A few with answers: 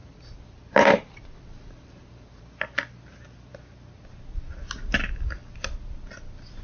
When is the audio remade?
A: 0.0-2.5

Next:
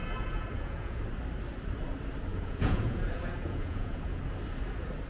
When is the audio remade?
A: 0.0-1.0; 2.3-4.2